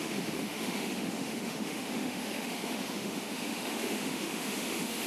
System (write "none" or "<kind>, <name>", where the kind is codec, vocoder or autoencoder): autoencoder, DAC-VAE